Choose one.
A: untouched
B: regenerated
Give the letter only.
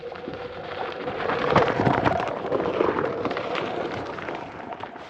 B